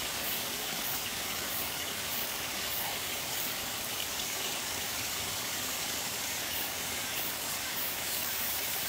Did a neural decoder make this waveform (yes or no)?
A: yes